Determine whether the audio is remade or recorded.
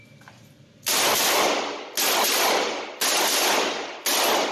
recorded